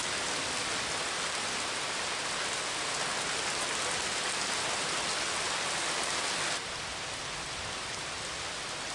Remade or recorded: recorded